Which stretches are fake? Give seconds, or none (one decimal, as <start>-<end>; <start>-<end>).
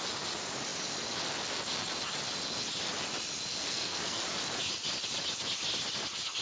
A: 3.5-4.2